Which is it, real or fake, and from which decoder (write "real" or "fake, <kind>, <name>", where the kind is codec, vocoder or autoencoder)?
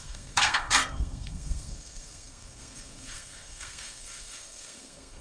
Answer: fake, codec, SNAC